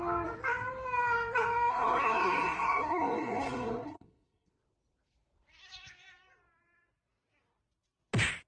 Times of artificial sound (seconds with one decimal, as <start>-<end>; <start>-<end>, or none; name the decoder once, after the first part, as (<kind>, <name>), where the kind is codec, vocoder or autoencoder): 1.7-4.5 (codec, SNAC)